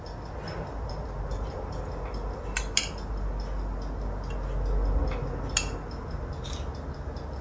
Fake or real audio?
real